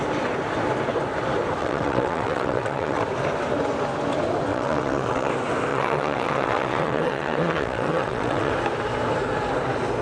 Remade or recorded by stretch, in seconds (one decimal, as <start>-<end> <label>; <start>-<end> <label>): 0.0-1.6 recorded; 1.6-3.0 remade; 3.0-4.5 recorded; 4.5-5.3 remade; 5.3-5.7 recorded; 5.7-8.5 remade; 8.5-10.0 recorded